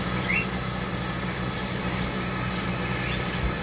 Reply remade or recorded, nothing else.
recorded